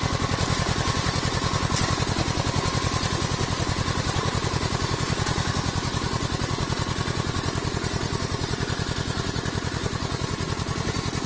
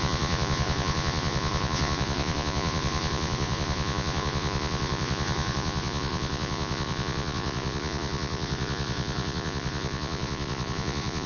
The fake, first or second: second